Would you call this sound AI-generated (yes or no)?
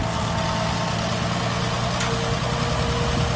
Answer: no